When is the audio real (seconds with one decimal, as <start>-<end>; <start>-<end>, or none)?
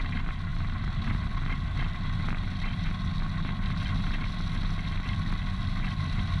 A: 0.0-6.4